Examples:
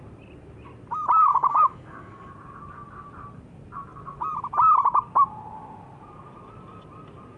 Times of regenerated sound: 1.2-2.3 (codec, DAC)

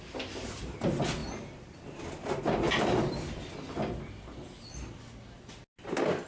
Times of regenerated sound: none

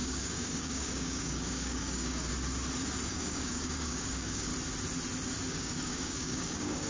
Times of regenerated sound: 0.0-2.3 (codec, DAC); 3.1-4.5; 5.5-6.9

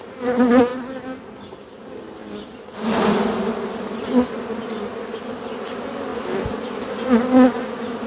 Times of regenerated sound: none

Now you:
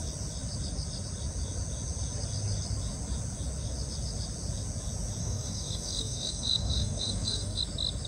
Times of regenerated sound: 5.2-7.6 (codec, DAC)

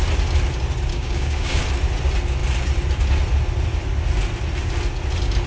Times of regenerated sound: 0.9-1.6 (codec, DAC)

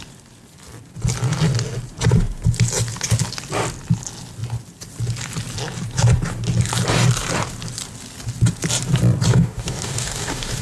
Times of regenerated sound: 9.3-10.6 (codec, DAC)

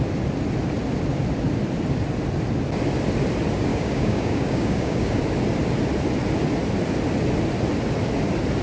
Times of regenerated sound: 3.7-5.2 (codec, DAC)